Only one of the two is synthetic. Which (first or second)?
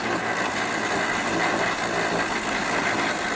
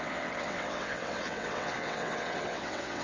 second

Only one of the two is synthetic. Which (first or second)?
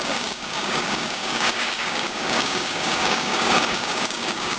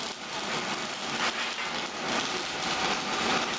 first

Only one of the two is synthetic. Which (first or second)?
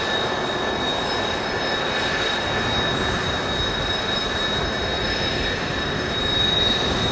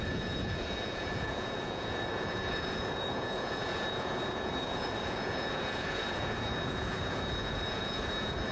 second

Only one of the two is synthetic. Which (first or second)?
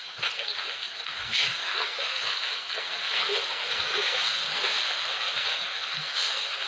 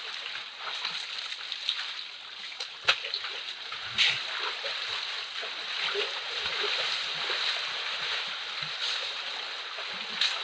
first